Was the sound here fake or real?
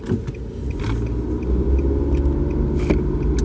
real